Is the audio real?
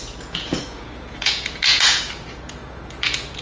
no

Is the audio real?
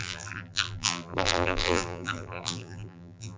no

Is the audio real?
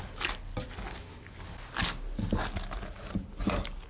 yes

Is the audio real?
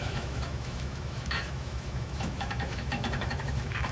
no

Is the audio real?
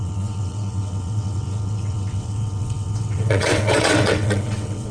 no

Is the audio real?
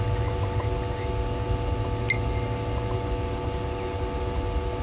yes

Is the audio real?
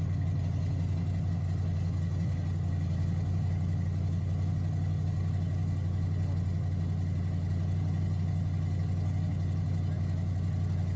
yes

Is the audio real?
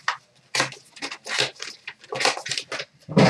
yes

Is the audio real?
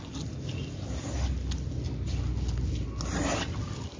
yes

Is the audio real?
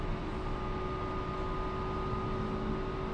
yes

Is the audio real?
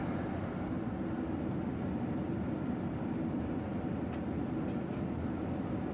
yes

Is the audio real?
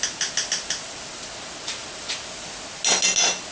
yes